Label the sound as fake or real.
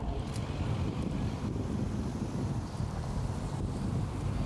real